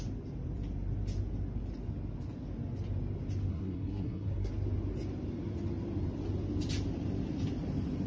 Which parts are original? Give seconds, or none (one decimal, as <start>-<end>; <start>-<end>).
0.0-3.5; 4.5-8.1